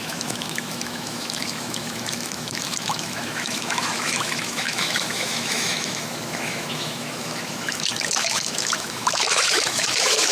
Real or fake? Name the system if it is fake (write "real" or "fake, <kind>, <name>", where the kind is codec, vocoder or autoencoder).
fake, autoencoder, DAC-VAE